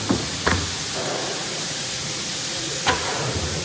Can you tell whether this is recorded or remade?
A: remade